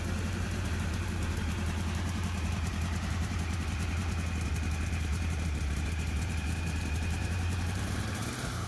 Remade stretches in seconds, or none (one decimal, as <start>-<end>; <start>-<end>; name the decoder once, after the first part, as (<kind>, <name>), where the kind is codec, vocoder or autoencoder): 0.0-4.0 (vocoder, BigVGAN v2); 4.9-8.7